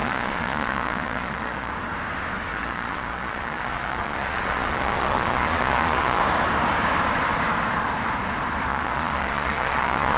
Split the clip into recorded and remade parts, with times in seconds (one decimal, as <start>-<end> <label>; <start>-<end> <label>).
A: 0.0-1.7 remade; 1.7-2.5 recorded; 2.5-6.2 remade; 6.2-8.7 recorded; 8.7-10.2 remade